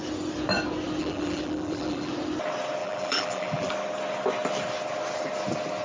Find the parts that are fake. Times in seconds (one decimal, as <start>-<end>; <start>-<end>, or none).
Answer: 1.0-2.1; 2.8-3.7